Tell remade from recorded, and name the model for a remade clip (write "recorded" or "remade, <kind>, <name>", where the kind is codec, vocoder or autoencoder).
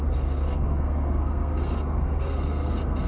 remade, codec, SNAC